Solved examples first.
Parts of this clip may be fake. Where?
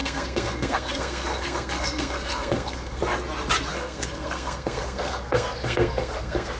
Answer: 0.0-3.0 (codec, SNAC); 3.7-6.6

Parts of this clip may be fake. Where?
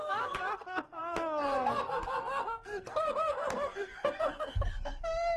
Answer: 0.0-5.4 (codec, SNAC)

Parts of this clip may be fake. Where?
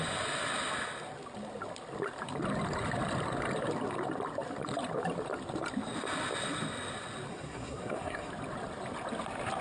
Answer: 7.3-8.3 (codec, SNAC)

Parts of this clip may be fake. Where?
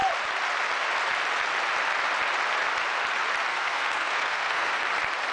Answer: 3.5-4.7 (codec, SNAC)